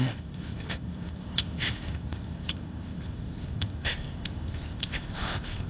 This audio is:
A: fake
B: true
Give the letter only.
A